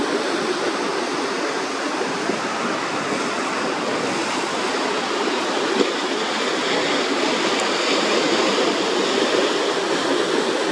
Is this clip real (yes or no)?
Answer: yes